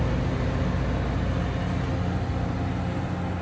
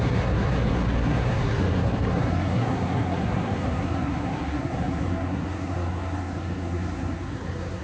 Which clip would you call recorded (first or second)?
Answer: first